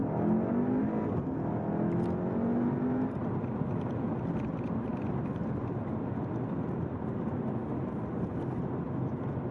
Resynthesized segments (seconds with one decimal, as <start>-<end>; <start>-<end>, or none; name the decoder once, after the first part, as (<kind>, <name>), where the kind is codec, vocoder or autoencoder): none